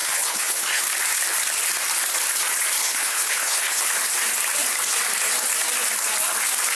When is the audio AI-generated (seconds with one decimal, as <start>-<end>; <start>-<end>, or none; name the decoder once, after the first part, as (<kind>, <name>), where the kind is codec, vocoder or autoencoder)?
0.0-0.8 (codec, HILCodec); 2.8-3.8